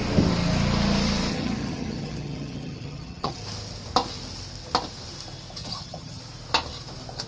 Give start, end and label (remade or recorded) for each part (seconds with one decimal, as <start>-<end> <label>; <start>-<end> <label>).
0.0-1.3 recorded; 1.3-3.4 remade; 3.4-5.6 recorded; 5.6-6.2 remade; 6.2-7.3 recorded